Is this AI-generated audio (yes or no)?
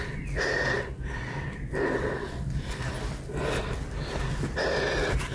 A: no